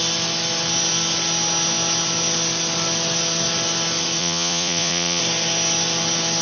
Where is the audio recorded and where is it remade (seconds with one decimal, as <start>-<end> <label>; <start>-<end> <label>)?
0.0-4.2 recorded; 4.2-5.2 remade; 5.2-6.4 recorded